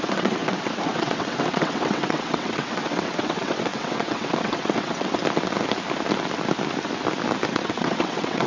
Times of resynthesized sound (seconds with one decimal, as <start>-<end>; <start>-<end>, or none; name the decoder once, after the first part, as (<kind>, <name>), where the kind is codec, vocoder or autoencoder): 0.0-5.2 (vocoder, WaveNeXt); 7.5-8.5